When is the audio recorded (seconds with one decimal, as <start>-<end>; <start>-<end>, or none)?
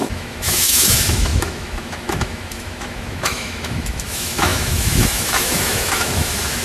none